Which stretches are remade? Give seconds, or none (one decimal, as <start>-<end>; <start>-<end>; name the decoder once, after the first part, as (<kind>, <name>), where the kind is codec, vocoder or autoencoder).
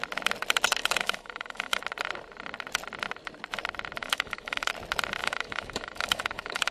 0.8-1.8 (autoencoder, DAC-VAE); 4.0-4.7; 5.2-6.7